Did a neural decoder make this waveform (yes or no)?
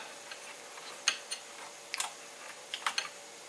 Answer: no